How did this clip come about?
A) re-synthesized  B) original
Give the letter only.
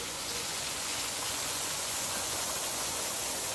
A